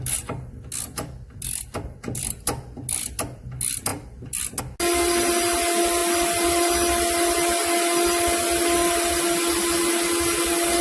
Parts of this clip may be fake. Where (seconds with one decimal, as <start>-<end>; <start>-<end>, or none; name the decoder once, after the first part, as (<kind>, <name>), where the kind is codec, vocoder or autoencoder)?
none

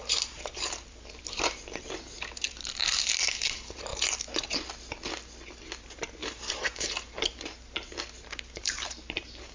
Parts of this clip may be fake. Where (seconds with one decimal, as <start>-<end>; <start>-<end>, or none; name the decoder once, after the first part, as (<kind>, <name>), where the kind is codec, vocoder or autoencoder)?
0.0-3.9 (vocoder, BigVGAN v2); 5.6-9.5